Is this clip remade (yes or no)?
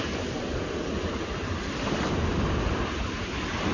no